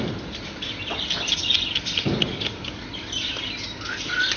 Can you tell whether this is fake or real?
real